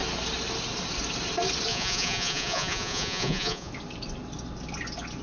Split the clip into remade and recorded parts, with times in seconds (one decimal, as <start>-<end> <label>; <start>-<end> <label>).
0.0-1.7 recorded; 1.7-3.7 remade; 3.7-5.2 recorded

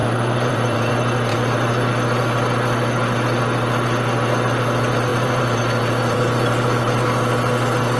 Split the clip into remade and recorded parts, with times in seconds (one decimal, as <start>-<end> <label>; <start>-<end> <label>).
0.0-0.9 remade; 0.9-1.3 recorded; 1.3-1.9 remade; 1.9-5.1 recorded; 5.1-7.0 remade; 7.0-8.0 recorded

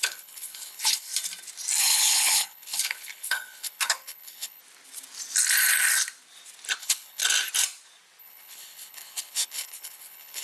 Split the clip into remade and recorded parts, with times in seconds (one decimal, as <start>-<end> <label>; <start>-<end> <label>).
0.0-1.1 remade; 1.1-1.8 recorded; 1.8-4.6 remade; 4.6-6.8 recorded; 6.8-7.2 remade; 7.2-8.2 recorded; 8.2-10.4 remade

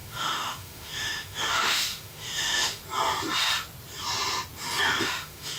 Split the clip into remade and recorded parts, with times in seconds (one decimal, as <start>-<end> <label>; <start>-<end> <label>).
0.0-2.8 remade; 2.8-5.0 recorded; 5.0-5.6 remade

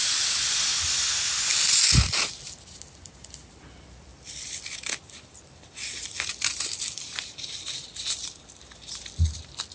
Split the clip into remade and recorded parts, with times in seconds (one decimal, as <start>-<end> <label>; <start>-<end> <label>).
0.0-3.5 recorded; 3.5-9.7 remade

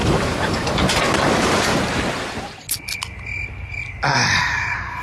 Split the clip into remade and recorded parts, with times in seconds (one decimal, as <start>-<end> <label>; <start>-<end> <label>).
0.0-1.0 remade; 1.0-1.7 recorded; 1.7-2.6 remade; 2.6-5.0 recorded

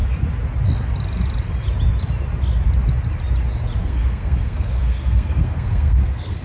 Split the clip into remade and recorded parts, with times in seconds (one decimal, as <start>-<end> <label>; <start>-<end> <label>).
0.0-3.8 recorded; 3.8-6.4 remade